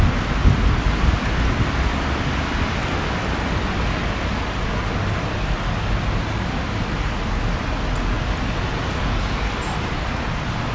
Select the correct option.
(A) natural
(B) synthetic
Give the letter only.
A